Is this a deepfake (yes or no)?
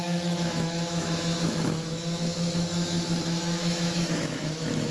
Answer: yes